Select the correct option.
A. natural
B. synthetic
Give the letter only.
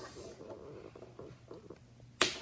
A